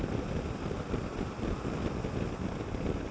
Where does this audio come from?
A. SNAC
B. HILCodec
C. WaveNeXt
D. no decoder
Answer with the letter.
D